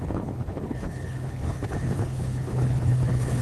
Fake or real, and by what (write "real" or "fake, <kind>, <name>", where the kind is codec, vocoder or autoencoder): fake, codec, HILCodec